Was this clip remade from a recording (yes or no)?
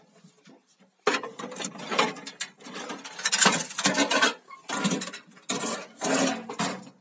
no